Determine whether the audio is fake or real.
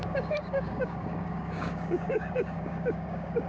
fake